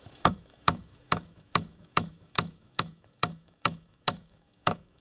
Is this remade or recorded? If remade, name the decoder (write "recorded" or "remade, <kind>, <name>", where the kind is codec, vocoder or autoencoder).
remade, autoencoder, DAC-VAE